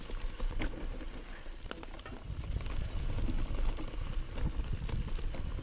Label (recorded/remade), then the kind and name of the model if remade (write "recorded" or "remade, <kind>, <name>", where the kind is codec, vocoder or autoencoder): recorded